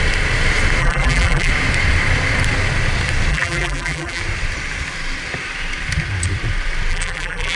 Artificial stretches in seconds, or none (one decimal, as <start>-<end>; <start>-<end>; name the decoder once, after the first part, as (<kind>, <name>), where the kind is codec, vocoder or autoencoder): 0.8-1.5 (vocoder, BigVGAN v2); 3.3-4.2; 6.9-7.6